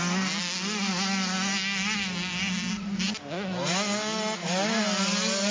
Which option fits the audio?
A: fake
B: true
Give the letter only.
B